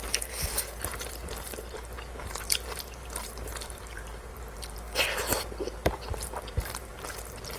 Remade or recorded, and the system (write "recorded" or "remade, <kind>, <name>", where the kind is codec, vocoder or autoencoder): remade, vocoder, BigVGAN v2